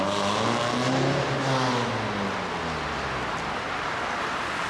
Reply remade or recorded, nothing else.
recorded